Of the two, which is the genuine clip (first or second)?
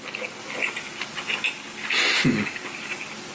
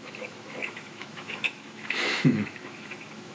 first